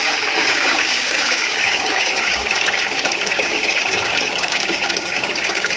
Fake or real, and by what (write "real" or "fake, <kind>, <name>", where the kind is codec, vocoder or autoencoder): fake, codec, DAC